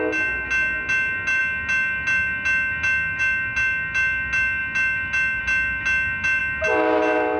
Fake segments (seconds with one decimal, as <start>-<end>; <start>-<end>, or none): none